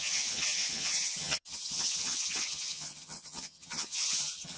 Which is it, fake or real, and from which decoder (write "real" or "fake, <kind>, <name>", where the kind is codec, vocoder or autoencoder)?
fake, vocoder, HiFi-GAN